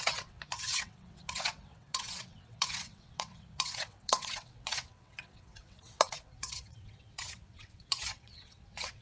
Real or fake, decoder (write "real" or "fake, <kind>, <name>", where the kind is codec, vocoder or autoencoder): fake, vocoder, WaveNeXt